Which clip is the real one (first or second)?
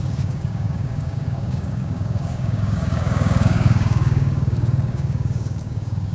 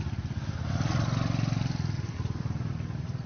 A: second